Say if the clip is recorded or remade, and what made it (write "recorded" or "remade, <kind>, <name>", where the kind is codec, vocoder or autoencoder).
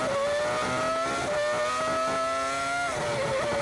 recorded